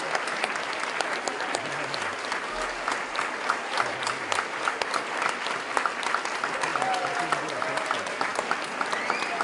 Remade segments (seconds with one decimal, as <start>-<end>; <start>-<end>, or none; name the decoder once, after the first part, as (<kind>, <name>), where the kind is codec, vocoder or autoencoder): none